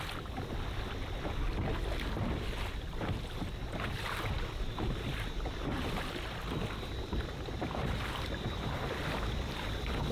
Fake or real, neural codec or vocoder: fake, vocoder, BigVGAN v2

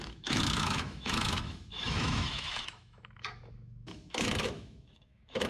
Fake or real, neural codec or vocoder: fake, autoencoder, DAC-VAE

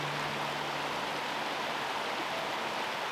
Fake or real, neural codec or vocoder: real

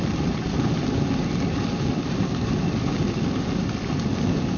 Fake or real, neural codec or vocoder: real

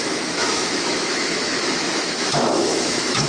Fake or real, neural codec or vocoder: fake, autoencoder, DAC-VAE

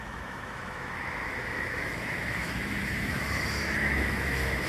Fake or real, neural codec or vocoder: fake, autoencoder, DAC-VAE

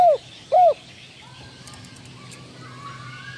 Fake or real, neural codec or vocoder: real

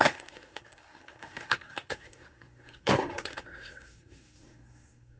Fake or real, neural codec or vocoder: fake, codec, SNAC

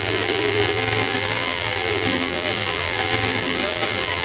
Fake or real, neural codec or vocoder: fake, vocoder, BigVGAN v2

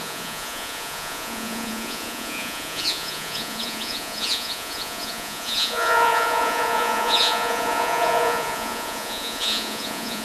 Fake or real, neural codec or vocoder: fake, vocoder, Vocos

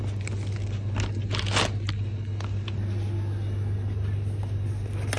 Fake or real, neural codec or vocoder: real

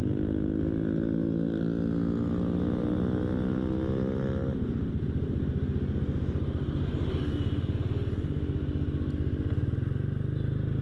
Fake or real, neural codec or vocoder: real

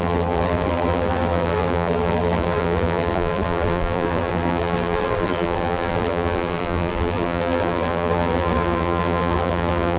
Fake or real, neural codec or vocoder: fake, vocoder, BigVGAN v2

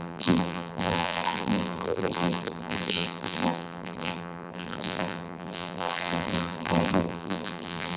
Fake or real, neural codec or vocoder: fake, vocoder, BigVGAN v2